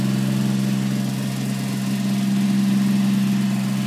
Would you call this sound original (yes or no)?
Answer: yes